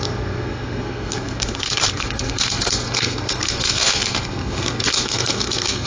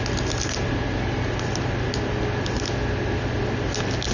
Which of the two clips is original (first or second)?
second